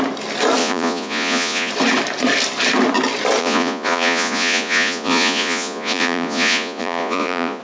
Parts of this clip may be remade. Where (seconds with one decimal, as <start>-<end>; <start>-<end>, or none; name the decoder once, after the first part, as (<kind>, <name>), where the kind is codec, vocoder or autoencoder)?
0.6-1.7 (vocoder, Vocos); 3.4-7.6